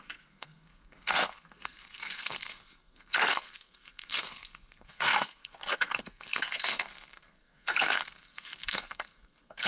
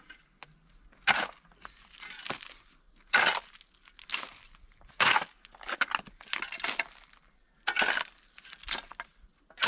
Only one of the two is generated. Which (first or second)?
first